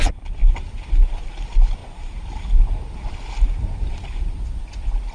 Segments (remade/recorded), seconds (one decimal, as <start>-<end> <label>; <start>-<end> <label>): 0.0-5.1 recorded